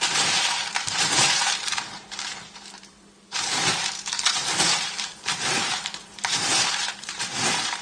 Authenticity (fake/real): fake